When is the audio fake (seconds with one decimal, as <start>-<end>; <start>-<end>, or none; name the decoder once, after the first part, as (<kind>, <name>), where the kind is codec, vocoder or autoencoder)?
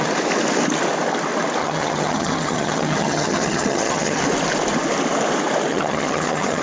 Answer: 1.6-4.2 (vocoder, HiFi-GAN); 5.7-6.6